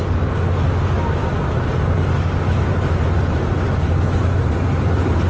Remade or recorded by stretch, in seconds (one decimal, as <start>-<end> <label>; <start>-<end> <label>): 0.0-5.3 recorded

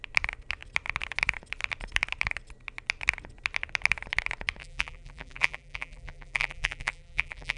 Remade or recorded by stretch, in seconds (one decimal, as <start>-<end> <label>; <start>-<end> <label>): 0.0-4.6 recorded; 4.6-7.6 remade

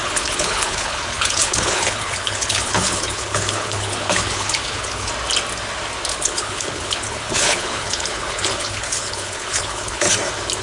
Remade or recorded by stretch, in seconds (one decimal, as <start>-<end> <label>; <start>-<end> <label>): 0.0-5.1 remade; 5.1-6.1 recorded; 6.1-10.1 remade; 10.1-10.6 recorded